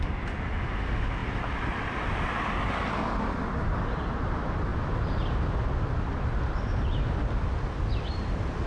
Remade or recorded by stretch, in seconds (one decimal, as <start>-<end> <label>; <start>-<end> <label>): 0.0-8.7 recorded